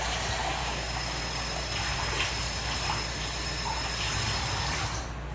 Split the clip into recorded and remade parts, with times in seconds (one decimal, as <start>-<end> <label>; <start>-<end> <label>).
0.0-0.6 recorded; 0.6-1.2 remade; 1.2-5.3 recorded